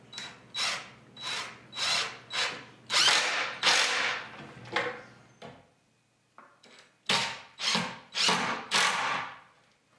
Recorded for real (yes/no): yes